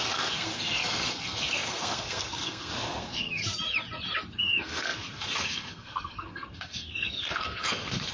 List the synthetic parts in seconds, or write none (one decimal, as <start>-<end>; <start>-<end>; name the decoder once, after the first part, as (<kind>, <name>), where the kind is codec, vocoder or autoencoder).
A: 0.0-3.4 (codec, SNAC); 4.3-8.1